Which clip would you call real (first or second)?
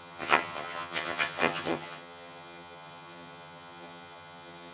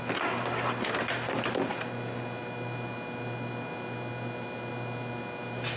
second